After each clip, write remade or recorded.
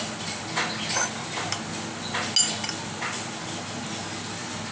recorded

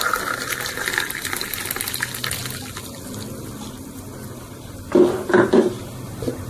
recorded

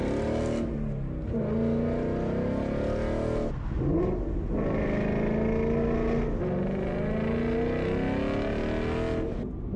recorded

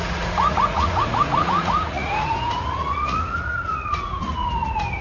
remade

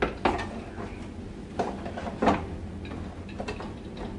recorded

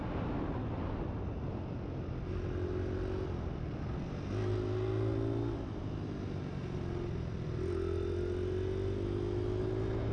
recorded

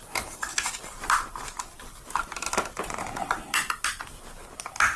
recorded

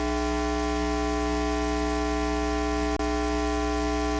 recorded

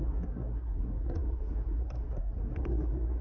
remade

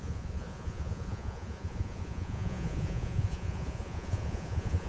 remade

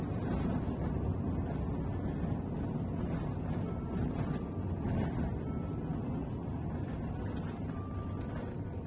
recorded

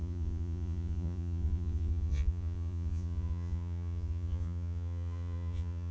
remade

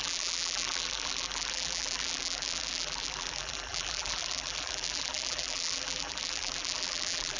remade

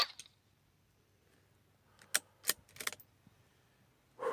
recorded